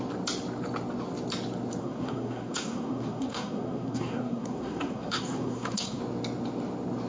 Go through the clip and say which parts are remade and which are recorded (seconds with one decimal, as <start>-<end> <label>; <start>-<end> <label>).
0.0-1.8 recorded; 1.8-6.0 remade; 6.0-7.1 recorded